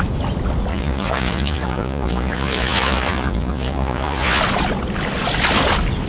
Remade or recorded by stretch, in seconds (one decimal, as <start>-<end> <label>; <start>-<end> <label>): 0.0-0.7 recorded; 0.7-4.4 remade; 4.4-6.1 recorded